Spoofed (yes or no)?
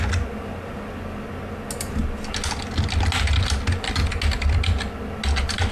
no